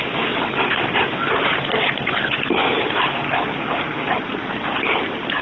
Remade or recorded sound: recorded